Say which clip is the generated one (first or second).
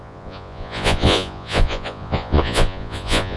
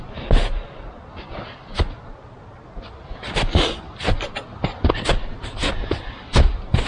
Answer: first